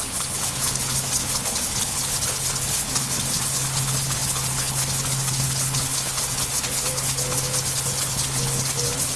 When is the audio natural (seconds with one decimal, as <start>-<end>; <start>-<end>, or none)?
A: none